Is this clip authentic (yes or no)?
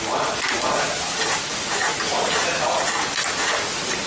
yes